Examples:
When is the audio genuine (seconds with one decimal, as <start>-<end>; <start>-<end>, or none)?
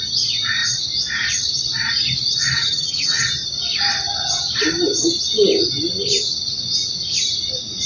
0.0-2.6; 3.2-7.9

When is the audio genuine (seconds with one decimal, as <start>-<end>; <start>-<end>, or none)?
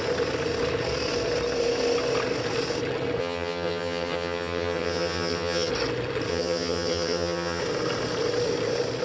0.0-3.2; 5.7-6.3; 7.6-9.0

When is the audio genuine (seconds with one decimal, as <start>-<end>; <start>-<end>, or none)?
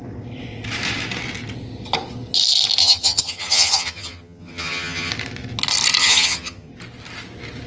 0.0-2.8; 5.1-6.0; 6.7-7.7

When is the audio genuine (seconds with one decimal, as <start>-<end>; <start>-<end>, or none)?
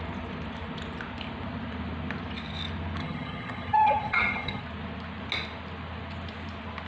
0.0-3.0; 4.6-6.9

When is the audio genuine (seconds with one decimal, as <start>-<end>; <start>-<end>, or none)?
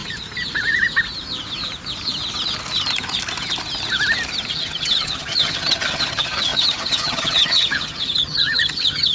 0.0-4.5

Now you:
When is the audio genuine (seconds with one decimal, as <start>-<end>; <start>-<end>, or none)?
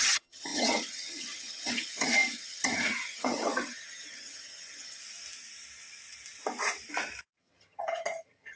5.0-7.4